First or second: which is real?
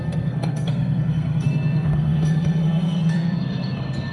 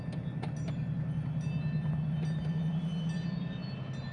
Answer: second